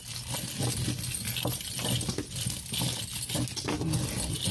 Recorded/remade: recorded